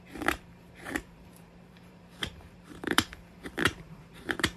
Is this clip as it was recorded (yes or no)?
no